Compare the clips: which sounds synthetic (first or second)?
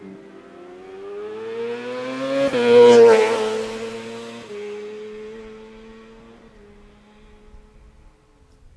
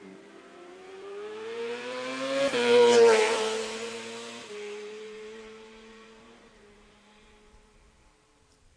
second